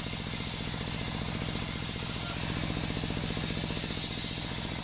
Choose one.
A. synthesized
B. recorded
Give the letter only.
B